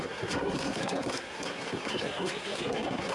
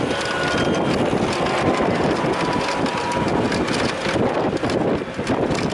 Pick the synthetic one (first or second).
first